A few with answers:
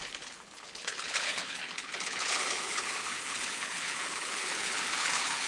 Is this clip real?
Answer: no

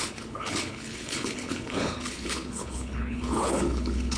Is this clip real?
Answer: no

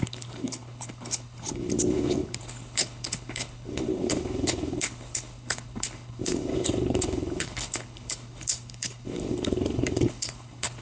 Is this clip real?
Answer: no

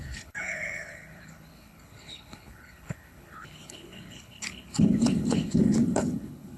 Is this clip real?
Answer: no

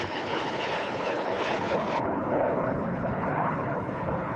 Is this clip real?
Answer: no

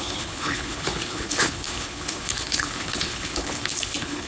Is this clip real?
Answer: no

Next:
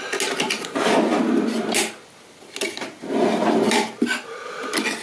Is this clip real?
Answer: yes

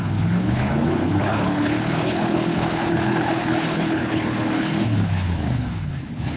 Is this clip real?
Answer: no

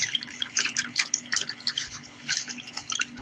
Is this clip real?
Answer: no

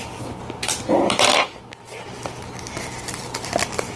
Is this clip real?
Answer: yes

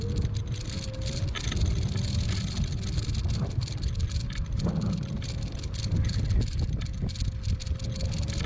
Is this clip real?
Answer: yes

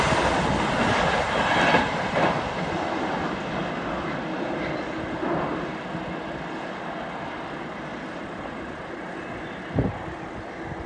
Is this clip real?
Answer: yes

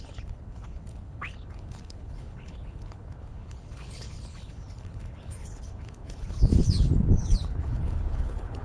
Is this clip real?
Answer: no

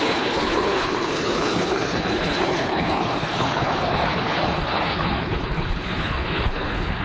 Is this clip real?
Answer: no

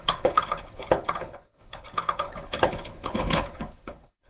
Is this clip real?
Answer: no